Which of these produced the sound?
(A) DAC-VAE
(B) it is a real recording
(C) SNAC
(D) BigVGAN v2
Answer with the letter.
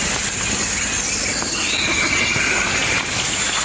B